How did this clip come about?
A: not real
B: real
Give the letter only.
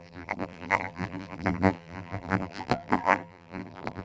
A